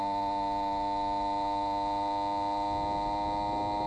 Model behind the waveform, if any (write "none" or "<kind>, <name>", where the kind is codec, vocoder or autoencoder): none